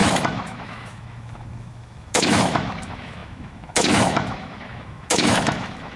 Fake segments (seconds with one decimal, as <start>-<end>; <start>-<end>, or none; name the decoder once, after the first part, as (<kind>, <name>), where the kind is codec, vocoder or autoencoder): 0.0-6.0 (autoencoder, DAC-VAE)